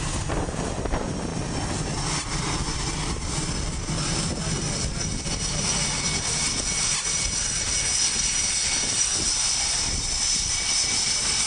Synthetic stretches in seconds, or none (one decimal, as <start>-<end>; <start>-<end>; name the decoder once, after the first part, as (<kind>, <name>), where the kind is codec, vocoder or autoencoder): none